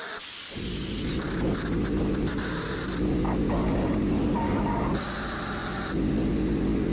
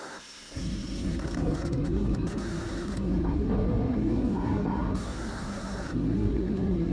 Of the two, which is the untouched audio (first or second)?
first